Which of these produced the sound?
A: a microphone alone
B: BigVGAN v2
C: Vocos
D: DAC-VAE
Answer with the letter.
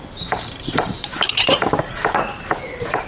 B